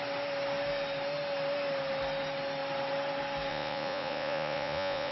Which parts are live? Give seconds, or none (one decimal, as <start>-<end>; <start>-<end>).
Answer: 0.0-3.5